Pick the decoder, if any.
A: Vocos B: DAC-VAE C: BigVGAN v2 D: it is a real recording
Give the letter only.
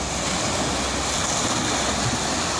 D